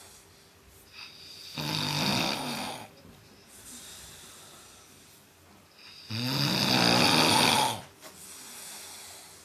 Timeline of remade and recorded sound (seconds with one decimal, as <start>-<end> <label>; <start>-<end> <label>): 0.0-9.4 recorded